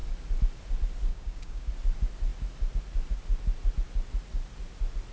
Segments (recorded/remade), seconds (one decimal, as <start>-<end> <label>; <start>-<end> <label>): 0.0-1.1 recorded; 1.1-1.7 remade; 1.7-5.1 recorded